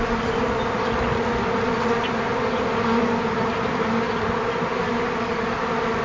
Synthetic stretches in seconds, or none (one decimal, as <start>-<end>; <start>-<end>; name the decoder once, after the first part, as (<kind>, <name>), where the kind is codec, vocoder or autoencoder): none